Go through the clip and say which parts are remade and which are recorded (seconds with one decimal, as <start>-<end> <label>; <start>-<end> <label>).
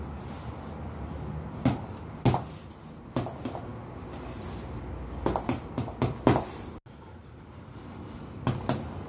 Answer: 0.0-9.1 recorded